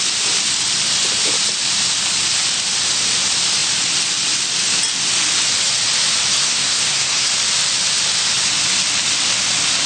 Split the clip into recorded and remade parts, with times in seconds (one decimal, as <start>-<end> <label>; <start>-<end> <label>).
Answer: 0.0-6.3 recorded; 6.3-7.3 remade; 7.3-9.9 recorded